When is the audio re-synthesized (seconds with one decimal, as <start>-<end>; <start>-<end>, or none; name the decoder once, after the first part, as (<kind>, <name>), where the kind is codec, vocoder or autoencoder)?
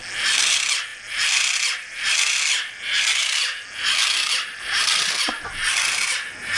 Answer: none